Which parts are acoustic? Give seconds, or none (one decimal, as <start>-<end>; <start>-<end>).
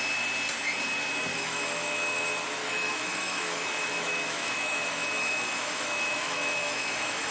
0.0-1.3; 2.2-2.6